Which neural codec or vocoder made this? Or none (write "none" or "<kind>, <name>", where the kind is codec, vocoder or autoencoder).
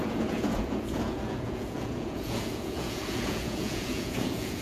vocoder, Vocos